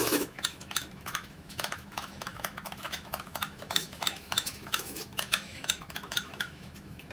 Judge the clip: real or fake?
fake